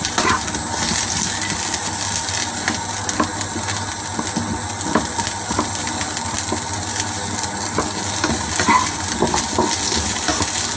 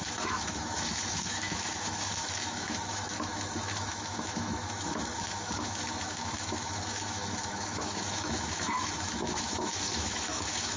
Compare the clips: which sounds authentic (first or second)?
first